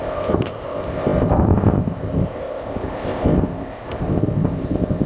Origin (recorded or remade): remade